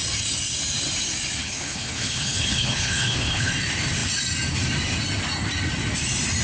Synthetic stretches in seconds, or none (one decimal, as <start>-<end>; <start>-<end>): 1.4-3.5